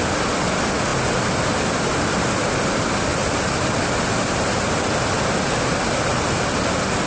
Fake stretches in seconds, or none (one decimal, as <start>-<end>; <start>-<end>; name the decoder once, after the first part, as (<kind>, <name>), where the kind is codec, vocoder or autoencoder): 3.1-3.7 (vocoder, BigVGAN v2)